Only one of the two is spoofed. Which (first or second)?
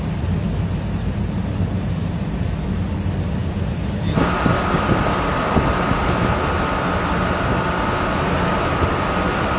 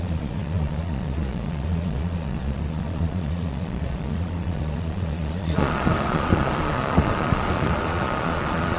second